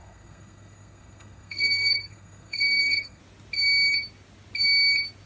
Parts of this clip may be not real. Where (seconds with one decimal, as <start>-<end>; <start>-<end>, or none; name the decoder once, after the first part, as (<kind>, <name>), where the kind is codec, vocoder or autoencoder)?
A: 0.0-3.2 (codec, SNAC)